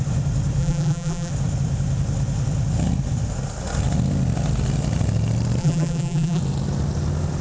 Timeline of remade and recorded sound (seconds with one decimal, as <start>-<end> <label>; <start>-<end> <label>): 0.0-0.6 recorded; 0.6-1.3 remade; 1.3-5.6 recorded; 5.6-6.4 remade; 6.4-7.4 recorded